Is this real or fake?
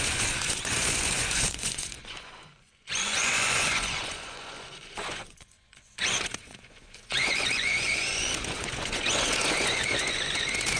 fake